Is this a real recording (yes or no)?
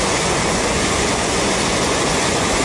no